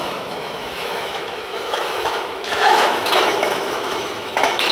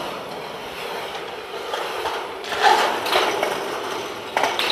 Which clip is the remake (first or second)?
first